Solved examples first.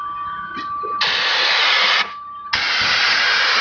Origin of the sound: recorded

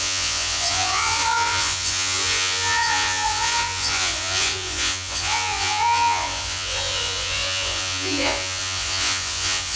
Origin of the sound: remade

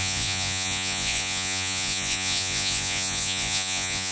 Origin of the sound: remade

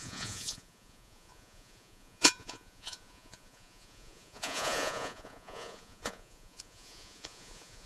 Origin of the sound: remade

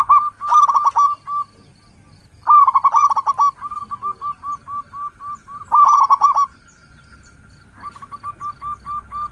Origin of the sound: recorded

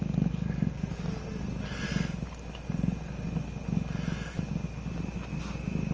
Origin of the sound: recorded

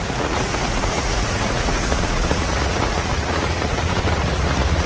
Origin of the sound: remade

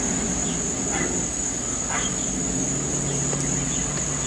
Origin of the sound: recorded